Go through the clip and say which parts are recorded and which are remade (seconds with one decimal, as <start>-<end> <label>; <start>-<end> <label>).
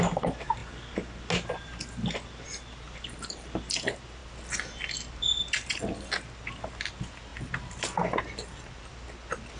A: 0.0-9.6 recorded